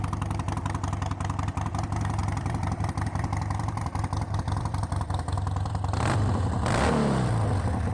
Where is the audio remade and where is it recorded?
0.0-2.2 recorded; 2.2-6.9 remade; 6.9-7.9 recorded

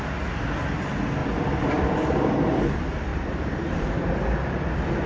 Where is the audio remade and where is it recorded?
0.0-1.2 recorded; 1.2-2.7 remade; 2.7-3.1 recorded; 3.1-4.2 remade; 4.2-5.1 recorded